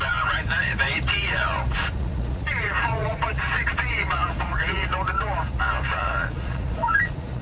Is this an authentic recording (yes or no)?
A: no